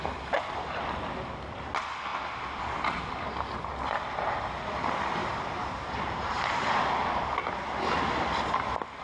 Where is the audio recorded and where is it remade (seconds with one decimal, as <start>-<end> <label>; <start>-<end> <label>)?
0.0-5.2 recorded; 5.2-6.7 remade; 6.7-9.0 recorded